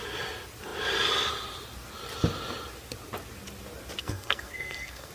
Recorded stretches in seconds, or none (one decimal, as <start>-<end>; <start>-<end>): 0.0-4.0